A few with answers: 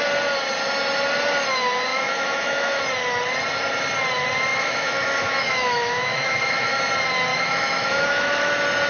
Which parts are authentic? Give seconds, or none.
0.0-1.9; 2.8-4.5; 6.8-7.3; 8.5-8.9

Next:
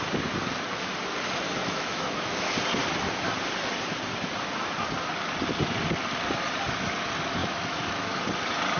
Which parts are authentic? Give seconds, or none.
0.0-1.6; 2.5-7.4; 8.2-8.8

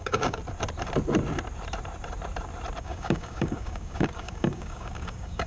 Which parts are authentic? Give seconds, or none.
0.4-2.8

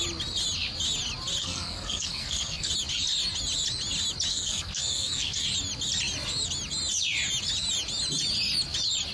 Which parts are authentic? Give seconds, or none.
0.0-1.4; 2.7-4.3; 5.4-9.1